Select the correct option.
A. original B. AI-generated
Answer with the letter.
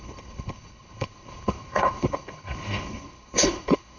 B